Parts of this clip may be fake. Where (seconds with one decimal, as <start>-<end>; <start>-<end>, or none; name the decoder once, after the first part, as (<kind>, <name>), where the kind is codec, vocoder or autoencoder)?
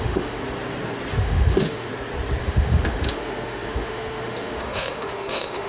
0.0-0.4 (autoencoder, DAC-VAE); 1.2-1.9; 2.4-5.7